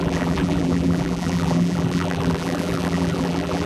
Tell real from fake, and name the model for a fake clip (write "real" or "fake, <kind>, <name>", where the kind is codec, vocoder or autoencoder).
fake, vocoder, BigVGAN v2